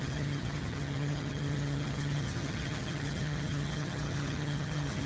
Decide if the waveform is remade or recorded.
remade